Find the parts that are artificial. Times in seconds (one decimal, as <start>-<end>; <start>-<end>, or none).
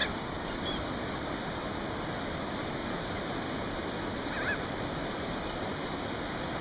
2.8-3.6; 5.0-6.6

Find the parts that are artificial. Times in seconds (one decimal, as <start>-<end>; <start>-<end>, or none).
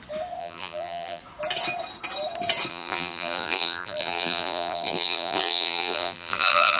0.4-1.2; 2.7-6.8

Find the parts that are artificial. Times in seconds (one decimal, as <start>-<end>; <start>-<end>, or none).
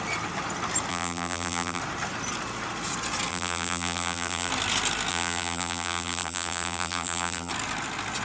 0.9-1.8; 3.3-4.5; 5.1-7.5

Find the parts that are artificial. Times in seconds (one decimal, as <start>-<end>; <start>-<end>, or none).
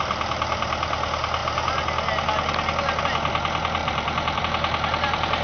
3.8-4.4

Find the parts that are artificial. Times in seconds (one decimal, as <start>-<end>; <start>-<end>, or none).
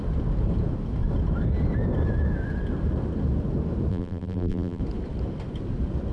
3.9-4.8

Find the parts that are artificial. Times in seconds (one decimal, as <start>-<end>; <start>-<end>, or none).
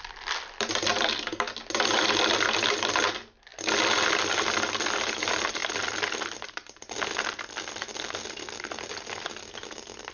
none